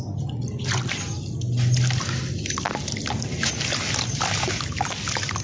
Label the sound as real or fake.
real